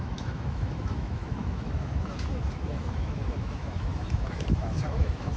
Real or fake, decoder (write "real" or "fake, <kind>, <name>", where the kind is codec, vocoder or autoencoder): fake, autoencoder, DAC-VAE